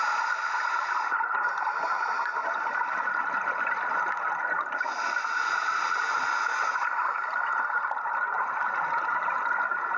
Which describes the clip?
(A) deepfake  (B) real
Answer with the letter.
A